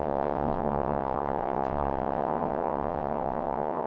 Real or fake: fake